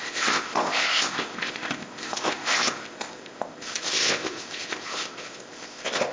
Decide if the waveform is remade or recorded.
remade